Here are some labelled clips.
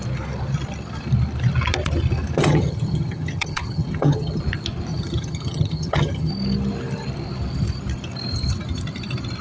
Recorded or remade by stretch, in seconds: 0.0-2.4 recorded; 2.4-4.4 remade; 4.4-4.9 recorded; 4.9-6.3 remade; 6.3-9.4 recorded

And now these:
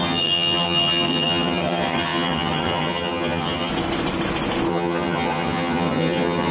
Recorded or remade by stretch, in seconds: 0.0-3.7 remade; 3.7-4.7 recorded; 4.7-6.5 remade

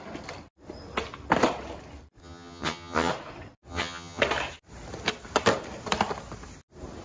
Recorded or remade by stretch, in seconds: 0.0-2.2 recorded; 2.2-3.1 remade; 3.1-3.7 recorded; 3.7-4.2 remade; 4.2-7.0 recorded